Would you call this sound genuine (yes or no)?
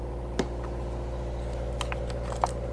yes